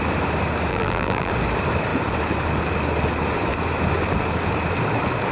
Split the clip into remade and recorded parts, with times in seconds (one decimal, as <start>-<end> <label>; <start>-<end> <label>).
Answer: 0.0-0.7 recorded; 0.7-1.3 remade; 1.3-5.3 recorded